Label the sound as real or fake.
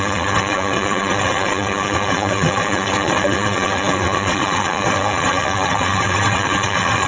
fake